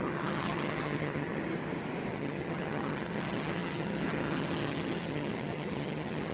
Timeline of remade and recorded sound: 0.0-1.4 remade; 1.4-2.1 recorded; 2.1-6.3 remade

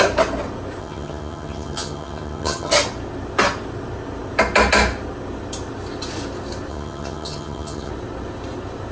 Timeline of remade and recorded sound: 0.0-0.8 recorded; 0.8-2.7 remade; 2.7-6.7 recorded; 6.7-7.9 remade; 7.9-8.9 recorded